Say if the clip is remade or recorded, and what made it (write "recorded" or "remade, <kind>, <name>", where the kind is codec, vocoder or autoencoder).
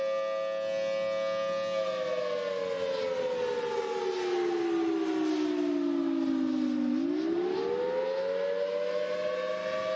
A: recorded